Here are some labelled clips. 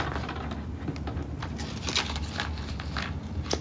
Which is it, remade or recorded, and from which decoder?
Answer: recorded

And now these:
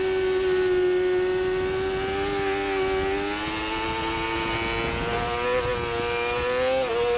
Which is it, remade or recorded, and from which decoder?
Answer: recorded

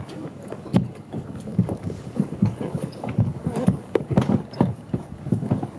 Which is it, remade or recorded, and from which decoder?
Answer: remade, codec, DAC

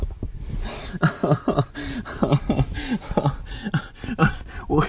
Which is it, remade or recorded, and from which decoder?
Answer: recorded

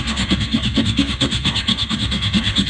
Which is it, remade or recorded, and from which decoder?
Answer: remade, codec, DAC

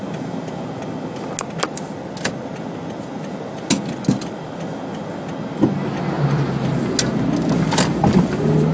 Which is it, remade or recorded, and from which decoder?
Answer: recorded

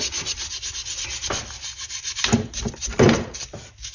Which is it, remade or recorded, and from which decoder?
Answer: recorded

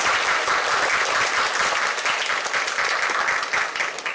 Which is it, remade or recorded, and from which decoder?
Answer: recorded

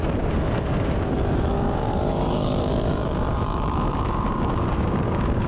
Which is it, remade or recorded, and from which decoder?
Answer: remade, codec, DAC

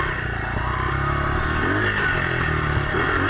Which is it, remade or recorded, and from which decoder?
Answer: recorded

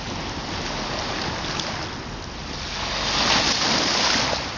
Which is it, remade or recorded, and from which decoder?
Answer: recorded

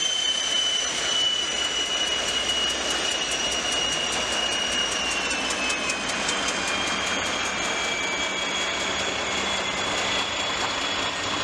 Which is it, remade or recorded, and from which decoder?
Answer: recorded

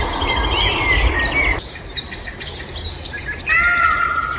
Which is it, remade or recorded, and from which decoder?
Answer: recorded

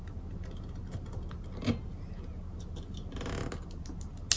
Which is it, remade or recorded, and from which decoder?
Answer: recorded